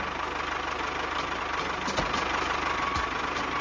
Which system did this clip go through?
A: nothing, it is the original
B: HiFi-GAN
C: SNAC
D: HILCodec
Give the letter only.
A